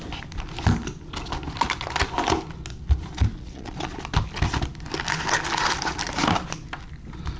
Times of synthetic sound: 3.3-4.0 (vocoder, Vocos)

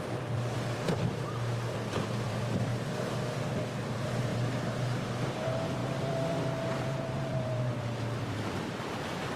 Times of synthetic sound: 0.0-2.7 (vocoder, BigVGAN v2); 3.6-9.4

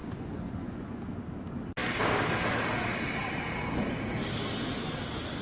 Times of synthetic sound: 0.0-1.0 (vocoder, Vocos)

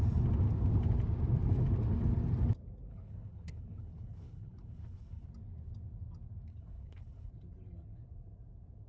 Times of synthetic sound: 2.9-5.3 (codec, HILCodec); 6.5-7.3

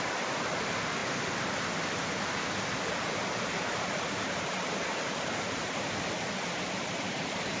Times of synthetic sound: none

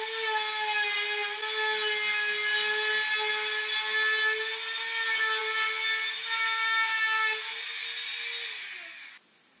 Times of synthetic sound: none

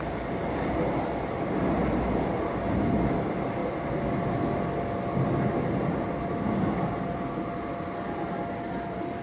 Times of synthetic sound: none

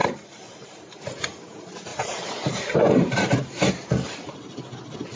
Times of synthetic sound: 0.0-1.0 (vocoder, BigVGAN v2); 1.9-3.7